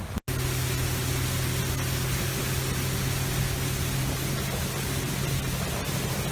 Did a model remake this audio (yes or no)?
no